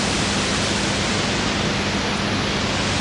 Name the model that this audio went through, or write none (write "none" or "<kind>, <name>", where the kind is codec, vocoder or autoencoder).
none